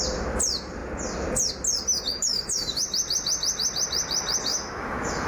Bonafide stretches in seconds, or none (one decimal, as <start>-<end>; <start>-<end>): 0.0-2.2; 2.9-4.5